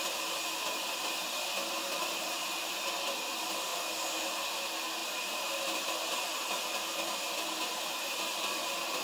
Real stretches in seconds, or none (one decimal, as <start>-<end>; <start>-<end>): 0.0-1.6; 2.7-9.0